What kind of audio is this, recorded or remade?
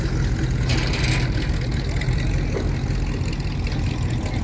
recorded